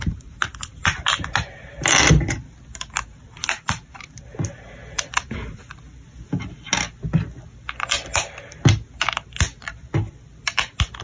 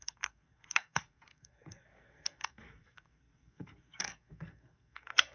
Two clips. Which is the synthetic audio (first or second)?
second